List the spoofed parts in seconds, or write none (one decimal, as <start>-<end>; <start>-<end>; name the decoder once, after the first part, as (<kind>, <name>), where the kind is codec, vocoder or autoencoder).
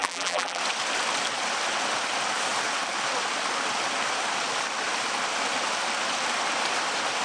0.0-0.6 (vocoder, BigVGAN v2)